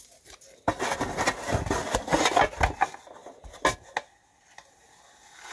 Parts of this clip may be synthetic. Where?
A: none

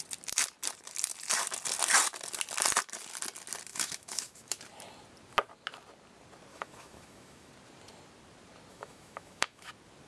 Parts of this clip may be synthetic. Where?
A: 3.7-4.6; 6.5-7.5; 8.7-9.7

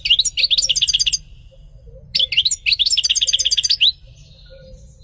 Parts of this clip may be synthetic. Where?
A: none

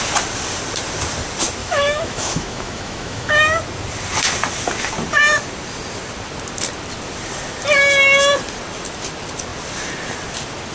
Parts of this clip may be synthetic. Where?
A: 1.6-3.3

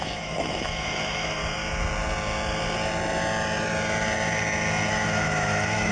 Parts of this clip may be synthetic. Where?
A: 0.0-1.4; 4.9-5.9

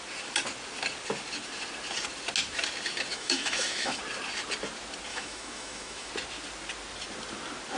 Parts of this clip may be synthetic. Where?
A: 3.1-4.0; 5.1-6.1